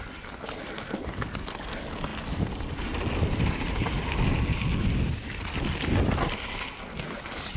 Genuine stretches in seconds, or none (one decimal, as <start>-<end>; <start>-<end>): 0.0-7.6